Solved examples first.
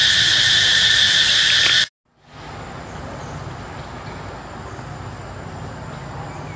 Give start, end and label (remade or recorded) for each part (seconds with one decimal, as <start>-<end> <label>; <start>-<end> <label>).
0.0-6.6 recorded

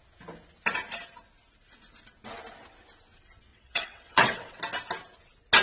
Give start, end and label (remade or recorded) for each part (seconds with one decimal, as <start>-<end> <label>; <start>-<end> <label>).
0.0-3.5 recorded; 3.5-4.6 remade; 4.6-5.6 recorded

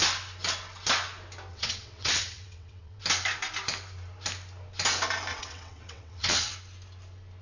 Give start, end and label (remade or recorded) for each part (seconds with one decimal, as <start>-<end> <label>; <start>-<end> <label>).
0.0-1.5 recorded; 1.5-3.0 remade; 3.0-5.3 recorded; 5.3-6.5 remade; 6.5-7.4 recorded

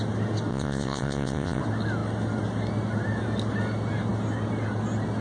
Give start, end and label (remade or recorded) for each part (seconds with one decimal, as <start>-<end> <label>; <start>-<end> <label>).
0.0-0.5 recorded; 0.5-1.6 remade; 1.6-5.2 recorded

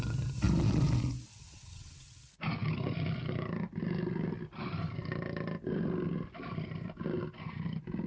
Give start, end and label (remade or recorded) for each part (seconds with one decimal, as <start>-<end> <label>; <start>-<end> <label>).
0.0-1.3 recorded; 1.3-2.2 remade; 2.2-8.1 recorded

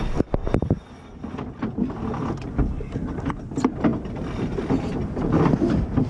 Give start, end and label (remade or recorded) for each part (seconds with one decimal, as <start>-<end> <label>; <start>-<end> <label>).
0.0-6.1 recorded

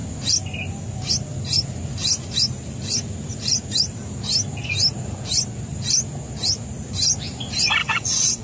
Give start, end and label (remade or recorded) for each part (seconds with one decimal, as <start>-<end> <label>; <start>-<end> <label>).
0.0-7.8 recorded; 7.8-8.4 remade